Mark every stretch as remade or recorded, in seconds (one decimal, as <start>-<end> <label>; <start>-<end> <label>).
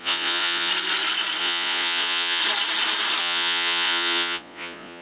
0.0-0.7 remade; 0.7-1.4 recorded; 1.4-2.4 remade; 2.4-3.2 recorded; 3.2-5.0 remade